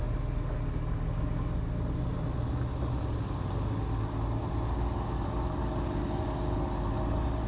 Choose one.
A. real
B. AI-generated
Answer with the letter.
A